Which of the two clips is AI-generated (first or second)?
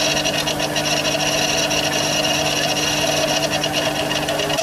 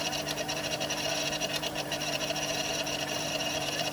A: second